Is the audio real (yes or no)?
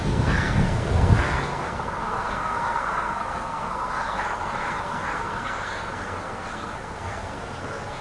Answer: no